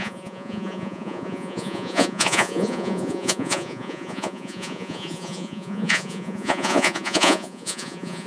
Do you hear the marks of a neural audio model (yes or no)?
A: yes